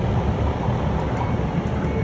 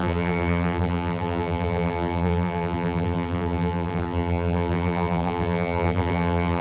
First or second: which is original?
first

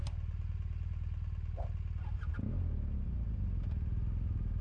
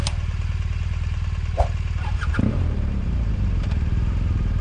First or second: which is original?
first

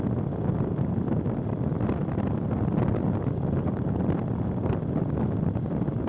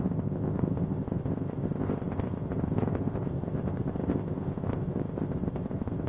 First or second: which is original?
first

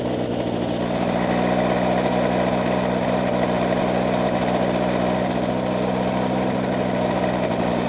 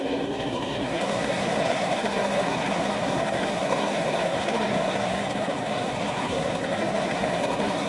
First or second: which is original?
first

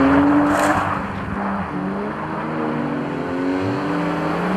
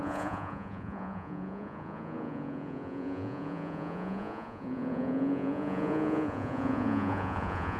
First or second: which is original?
first